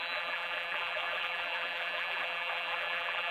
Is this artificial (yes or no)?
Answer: yes